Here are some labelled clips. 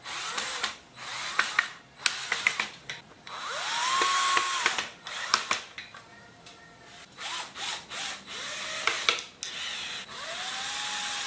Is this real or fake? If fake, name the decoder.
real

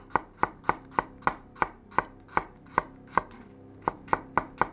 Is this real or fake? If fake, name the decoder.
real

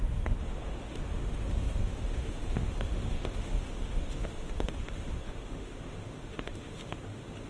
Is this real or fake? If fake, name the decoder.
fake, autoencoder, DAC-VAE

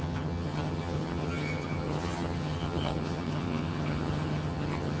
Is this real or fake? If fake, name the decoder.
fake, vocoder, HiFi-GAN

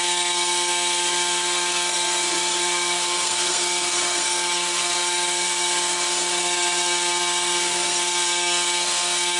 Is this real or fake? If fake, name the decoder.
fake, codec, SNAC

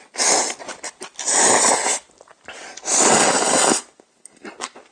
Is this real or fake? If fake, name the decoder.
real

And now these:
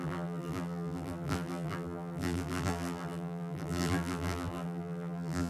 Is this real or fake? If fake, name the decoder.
fake, vocoder, BigVGAN v2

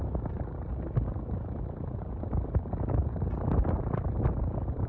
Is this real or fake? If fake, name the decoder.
real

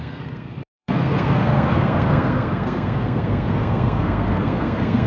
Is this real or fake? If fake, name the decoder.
fake, codec, SNAC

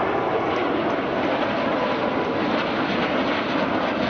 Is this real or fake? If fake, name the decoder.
real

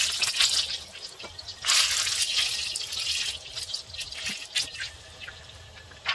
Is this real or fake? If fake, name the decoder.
real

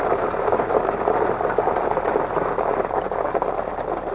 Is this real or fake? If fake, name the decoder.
real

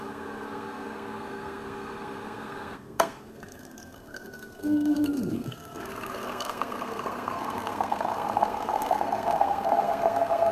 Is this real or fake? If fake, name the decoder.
fake, codec, SNAC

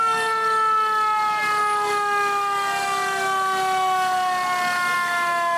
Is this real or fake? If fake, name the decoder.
real